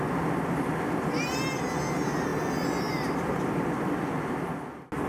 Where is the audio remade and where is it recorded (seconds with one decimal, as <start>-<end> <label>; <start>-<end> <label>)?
0.0-2.3 recorded; 2.3-4.0 remade; 4.0-5.1 recorded